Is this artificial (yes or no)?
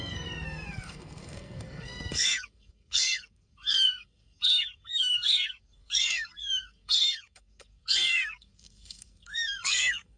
yes